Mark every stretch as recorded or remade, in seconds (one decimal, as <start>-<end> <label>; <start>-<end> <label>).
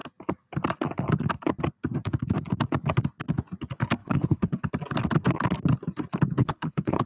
0.0-4.0 recorded; 4.0-4.7 remade; 4.7-6.4 recorded; 6.4-7.1 remade